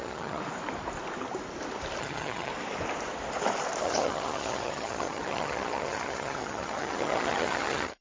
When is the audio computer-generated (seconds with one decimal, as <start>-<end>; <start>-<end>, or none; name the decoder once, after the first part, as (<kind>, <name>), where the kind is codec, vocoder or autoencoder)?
0.0-0.4 (vocoder, HiFi-GAN); 2.0-2.5; 3.8-8.0